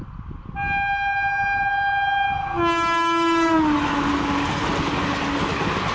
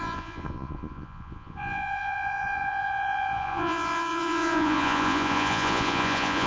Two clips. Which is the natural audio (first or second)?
first